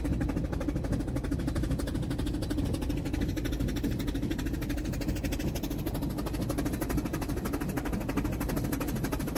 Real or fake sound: real